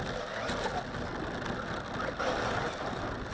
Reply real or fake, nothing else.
real